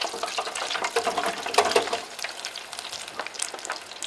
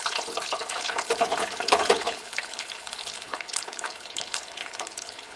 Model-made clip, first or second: second